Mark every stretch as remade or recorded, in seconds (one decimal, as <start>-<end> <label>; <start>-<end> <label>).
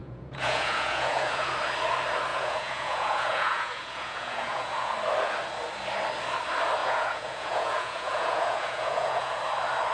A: 0.0-1.5 remade; 1.5-2.3 recorded; 2.3-4.9 remade; 4.9-6.8 recorded; 6.8-9.4 remade; 9.4-9.9 recorded